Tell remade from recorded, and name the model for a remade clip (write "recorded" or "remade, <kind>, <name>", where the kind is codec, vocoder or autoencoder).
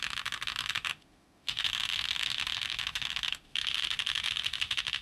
remade, autoencoder, DAC-VAE